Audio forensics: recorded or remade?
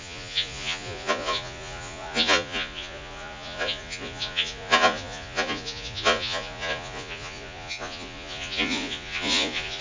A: remade